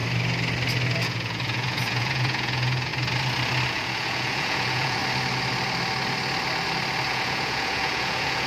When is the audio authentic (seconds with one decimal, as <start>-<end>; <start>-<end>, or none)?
0.0-1.0; 2.9-3.7; 5.0-7.1